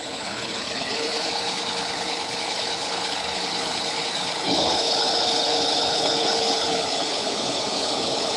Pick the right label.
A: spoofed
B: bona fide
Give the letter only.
A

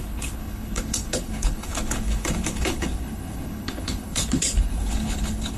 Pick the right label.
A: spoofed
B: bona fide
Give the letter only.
A